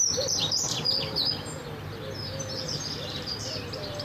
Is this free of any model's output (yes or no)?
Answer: no